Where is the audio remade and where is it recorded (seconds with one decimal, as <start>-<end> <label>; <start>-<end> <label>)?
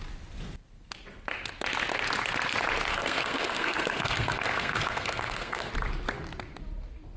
0.0-2.9 recorded; 2.9-5.7 remade; 5.7-7.2 recorded